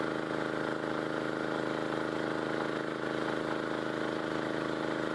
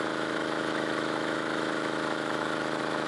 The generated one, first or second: second